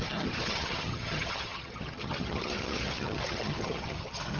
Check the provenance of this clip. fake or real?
fake